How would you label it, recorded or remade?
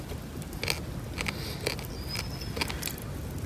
recorded